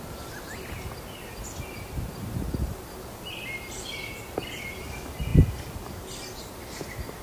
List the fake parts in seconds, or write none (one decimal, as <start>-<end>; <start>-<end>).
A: none